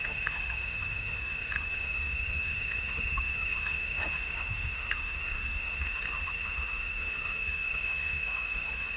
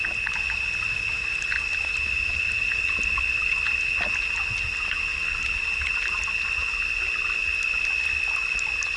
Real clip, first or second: second